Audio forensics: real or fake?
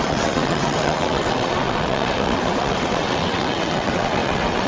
fake